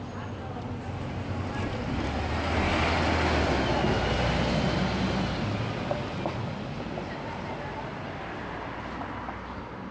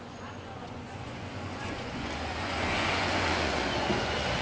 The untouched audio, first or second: first